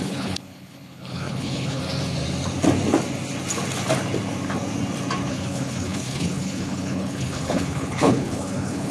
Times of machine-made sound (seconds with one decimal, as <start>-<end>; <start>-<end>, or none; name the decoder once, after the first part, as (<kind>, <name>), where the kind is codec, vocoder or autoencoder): 0.0-1.8 (codec, HILCodec); 5.3-8.9